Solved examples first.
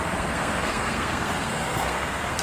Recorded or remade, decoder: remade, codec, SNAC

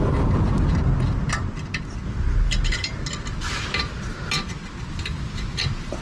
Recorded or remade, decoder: recorded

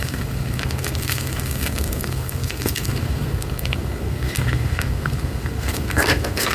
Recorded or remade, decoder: remade, codec, SNAC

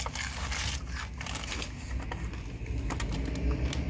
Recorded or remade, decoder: recorded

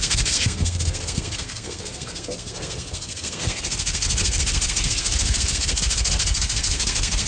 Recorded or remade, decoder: remade, codec, SNAC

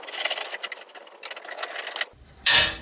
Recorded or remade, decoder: recorded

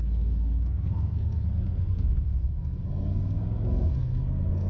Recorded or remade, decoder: remade, codec, SNAC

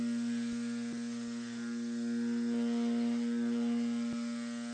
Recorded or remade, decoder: recorded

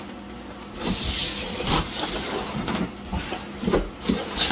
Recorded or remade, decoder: recorded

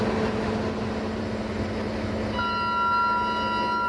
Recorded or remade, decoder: recorded